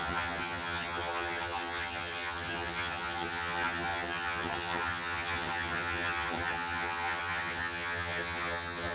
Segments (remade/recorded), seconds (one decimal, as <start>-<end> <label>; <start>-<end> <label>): 0.0-8.9 remade